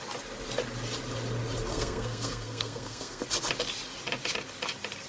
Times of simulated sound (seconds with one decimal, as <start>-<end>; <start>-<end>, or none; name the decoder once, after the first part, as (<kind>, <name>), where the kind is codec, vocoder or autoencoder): 1.7-3.2 (codec, SNAC)